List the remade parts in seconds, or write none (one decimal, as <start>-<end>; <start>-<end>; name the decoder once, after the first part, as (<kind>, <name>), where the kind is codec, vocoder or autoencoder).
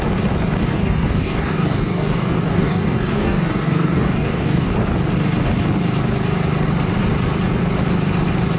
0.7-4.7 (codec, DAC)